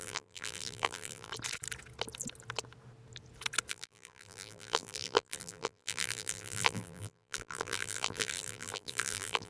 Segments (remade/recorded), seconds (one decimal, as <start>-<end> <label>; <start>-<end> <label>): 0.0-1.3 remade; 1.3-3.7 recorded; 3.7-9.5 remade